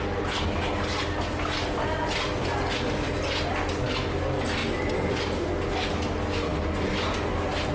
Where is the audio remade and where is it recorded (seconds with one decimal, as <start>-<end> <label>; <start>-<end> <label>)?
0.0-7.7 recorded